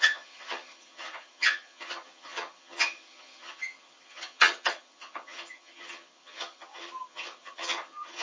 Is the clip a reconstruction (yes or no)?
yes